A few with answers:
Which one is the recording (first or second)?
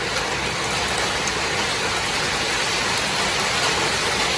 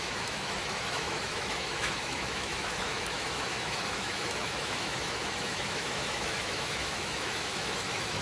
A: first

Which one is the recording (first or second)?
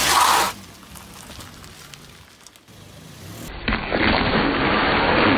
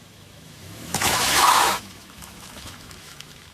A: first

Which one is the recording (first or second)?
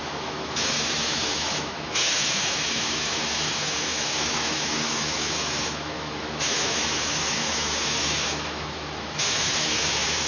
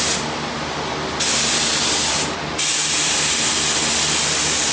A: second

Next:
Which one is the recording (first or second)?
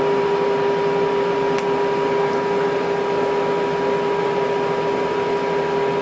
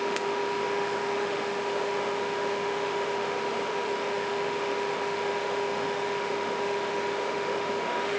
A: first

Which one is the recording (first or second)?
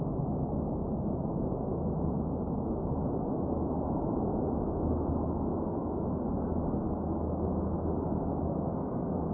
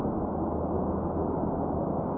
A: second